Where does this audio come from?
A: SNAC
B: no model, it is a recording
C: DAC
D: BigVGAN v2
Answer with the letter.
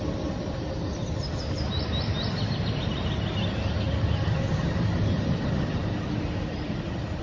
B